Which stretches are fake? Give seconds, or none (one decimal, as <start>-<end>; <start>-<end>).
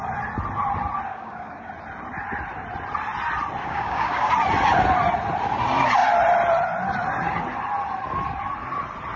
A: 1.1-1.7; 3.6-4.3